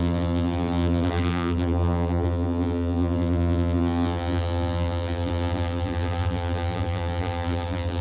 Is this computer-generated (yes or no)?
yes